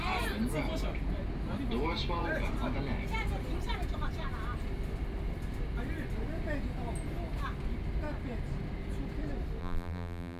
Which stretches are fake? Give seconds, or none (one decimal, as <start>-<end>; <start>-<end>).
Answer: 9.6-10.4

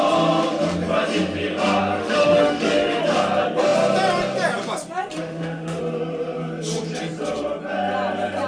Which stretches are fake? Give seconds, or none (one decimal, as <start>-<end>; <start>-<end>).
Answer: 2.0-3.0; 5.1-5.8